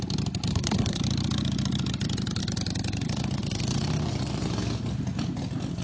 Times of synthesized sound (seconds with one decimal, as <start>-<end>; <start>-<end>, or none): 0.5-1.0